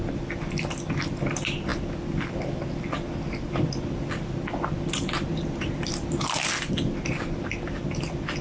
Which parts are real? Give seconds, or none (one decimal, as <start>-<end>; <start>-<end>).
0.0-8.4